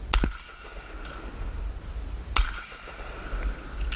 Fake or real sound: real